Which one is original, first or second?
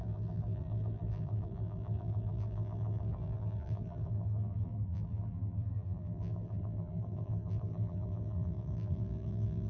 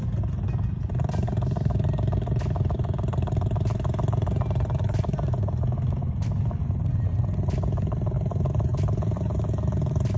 second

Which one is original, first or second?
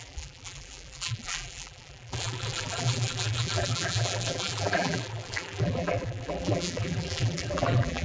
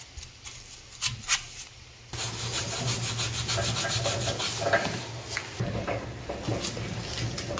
second